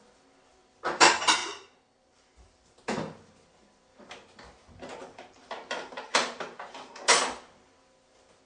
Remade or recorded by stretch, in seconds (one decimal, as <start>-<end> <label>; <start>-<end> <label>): 0.0-1.4 recorded; 1.4-2.8 remade; 2.8-5.0 recorded; 5.0-6.4 remade; 6.4-8.5 recorded